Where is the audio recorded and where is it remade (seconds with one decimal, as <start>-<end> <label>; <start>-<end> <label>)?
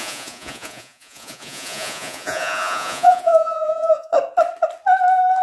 0.0-4.1 remade; 4.1-5.4 recorded